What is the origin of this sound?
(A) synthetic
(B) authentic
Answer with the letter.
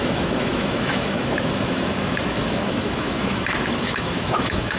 A